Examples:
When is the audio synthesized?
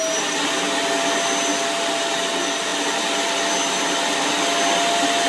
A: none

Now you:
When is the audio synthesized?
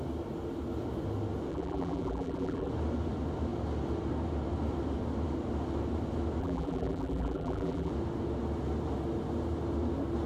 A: 1.5-2.7 (vocoder, BigVGAN v2); 6.4-7.9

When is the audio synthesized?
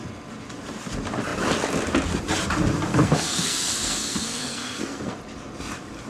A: 2.9-5.2 (codec, SNAC)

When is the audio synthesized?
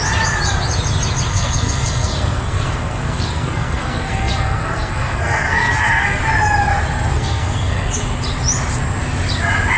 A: 1.3-6.2 (codec, SNAC); 7.1-7.9